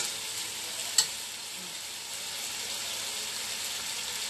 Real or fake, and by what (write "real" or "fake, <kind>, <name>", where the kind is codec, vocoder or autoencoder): real